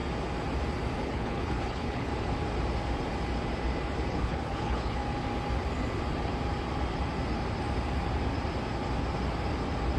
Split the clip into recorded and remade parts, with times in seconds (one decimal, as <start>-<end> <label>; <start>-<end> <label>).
0.0-1.0 recorded; 1.0-2.1 remade; 2.1-4.1 recorded; 4.1-5.0 remade; 5.0-10.0 recorded

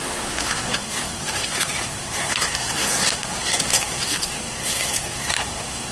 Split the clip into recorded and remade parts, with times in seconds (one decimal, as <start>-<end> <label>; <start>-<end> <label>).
0.0-5.9 remade